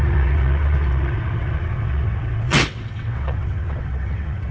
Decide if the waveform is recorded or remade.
remade